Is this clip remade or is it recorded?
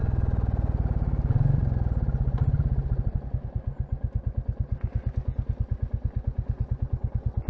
recorded